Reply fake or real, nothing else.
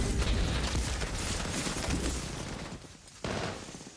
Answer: real